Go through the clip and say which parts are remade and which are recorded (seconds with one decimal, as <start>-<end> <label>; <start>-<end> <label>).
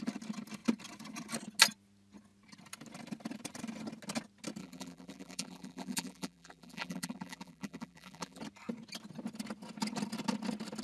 0.0-4.6 recorded; 4.6-8.4 remade; 8.4-10.8 recorded